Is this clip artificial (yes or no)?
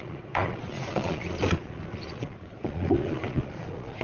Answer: yes